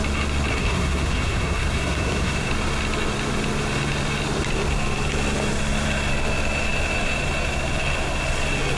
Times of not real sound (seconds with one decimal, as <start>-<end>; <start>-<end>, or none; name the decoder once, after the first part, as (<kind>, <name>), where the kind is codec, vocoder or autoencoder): 0.5-2.5 (codec, SNAC)